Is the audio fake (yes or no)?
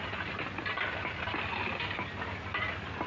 no